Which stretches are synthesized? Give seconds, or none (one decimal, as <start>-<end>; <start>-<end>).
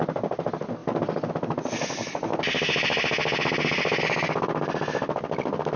none